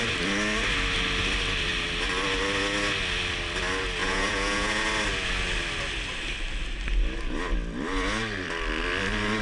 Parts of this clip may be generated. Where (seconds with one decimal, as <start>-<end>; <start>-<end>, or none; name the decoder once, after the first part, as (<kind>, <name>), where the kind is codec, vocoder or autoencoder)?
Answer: 4.0-4.9 (vocoder, Vocos)